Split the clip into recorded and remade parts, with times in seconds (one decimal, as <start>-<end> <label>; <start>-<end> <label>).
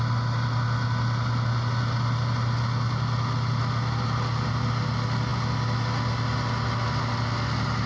0.0-7.9 recorded